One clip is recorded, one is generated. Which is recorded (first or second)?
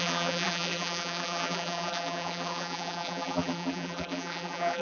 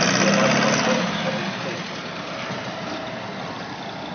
second